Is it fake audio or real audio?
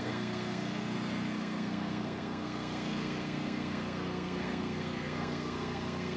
fake